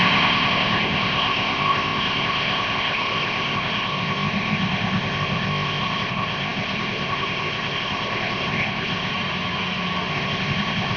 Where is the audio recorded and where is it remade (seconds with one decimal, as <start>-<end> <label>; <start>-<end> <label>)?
0.0-9.1 remade; 9.1-10.1 recorded; 10.1-11.0 remade